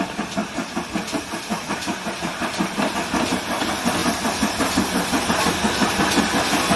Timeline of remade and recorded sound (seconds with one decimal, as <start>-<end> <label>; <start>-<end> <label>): 0.0-4.0 remade; 4.0-5.2 recorded; 5.2-6.8 remade